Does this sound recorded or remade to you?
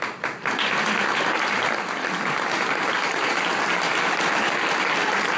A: recorded